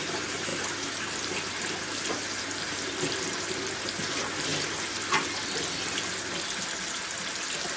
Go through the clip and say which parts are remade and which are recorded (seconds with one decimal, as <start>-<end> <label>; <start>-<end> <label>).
0.0-7.8 recorded